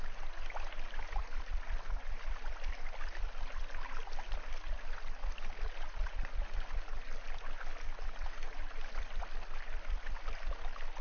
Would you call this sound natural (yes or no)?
yes